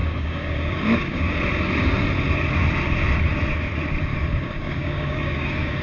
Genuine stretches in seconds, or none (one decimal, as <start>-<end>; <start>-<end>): 1.3-4.1